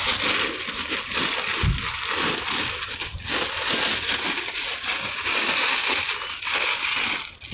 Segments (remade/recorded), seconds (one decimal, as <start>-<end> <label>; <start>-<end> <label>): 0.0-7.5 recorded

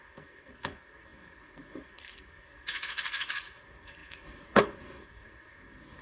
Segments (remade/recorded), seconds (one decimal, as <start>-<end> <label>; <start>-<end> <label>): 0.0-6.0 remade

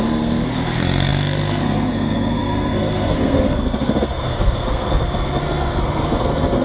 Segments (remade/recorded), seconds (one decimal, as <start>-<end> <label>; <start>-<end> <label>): 0.0-6.6 remade

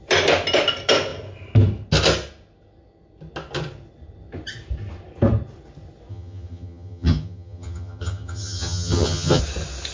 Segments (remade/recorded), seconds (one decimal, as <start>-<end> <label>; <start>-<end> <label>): 0.0-6.1 recorded; 6.1-9.4 remade; 9.4-9.9 recorded

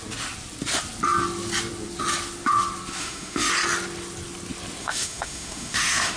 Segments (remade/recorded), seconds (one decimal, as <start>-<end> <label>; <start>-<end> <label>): 0.0-3.0 recorded; 3.0-3.5 remade; 3.5-4.8 recorded; 4.8-6.2 remade